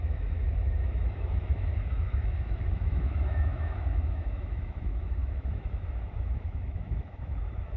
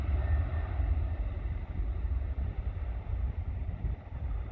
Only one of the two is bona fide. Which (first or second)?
second